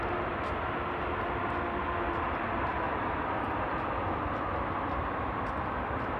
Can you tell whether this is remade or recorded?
recorded